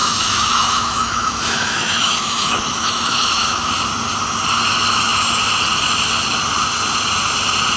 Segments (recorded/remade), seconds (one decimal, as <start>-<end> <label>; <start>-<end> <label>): 0.0-3.7 remade; 3.7-7.8 recorded